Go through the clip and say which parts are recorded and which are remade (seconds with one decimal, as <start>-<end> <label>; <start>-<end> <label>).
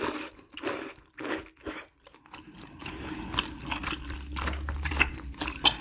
0.0-5.8 recorded